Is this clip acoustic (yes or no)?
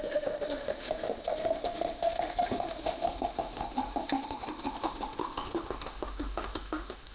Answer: no